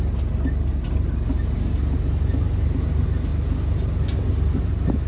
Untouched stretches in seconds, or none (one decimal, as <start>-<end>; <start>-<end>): 0.0-5.1